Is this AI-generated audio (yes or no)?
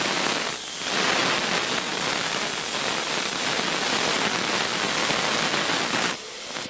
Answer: no